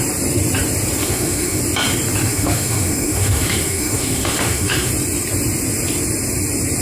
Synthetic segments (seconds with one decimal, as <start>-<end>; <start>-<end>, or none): 1.0-1.6; 2.2-4.9